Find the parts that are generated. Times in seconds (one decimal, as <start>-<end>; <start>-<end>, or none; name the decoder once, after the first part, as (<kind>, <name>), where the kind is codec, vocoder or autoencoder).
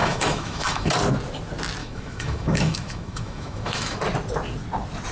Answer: 0.0-0.9 (autoencoder, DAC-VAE); 1.8-4.0